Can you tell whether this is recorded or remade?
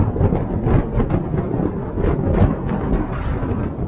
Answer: recorded